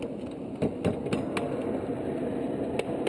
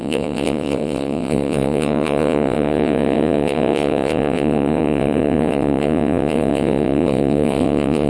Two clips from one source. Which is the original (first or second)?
first